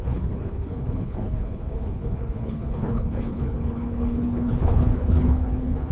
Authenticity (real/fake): fake